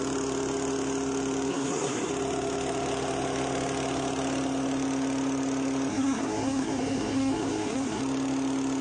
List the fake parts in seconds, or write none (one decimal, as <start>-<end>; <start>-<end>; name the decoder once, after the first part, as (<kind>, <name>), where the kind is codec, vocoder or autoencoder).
1.5-2.1 (codec, SNAC); 5.9-8.0